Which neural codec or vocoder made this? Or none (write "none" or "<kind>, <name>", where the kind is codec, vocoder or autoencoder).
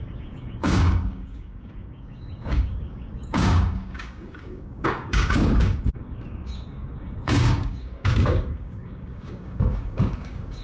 codec, DAC